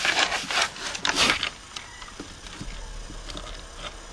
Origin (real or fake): real